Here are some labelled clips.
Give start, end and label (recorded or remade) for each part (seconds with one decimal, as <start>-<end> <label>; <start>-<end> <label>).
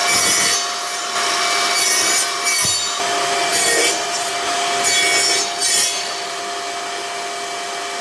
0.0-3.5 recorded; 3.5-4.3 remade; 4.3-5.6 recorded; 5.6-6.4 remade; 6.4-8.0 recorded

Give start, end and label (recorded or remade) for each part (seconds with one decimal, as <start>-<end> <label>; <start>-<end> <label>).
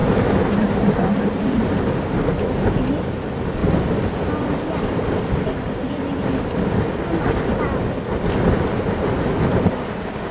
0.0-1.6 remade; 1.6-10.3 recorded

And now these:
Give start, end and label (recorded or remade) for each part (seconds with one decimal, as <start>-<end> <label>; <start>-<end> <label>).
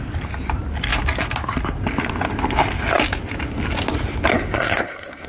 0.0-4.3 recorded; 4.3-5.3 remade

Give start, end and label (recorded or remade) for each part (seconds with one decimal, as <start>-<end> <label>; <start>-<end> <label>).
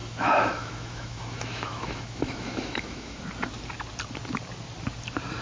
0.0-3.2 remade; 3.2-5.4 recorded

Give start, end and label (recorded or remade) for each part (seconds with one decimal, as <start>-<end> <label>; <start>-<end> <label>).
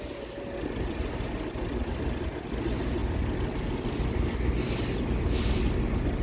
0.0-6.2 recorded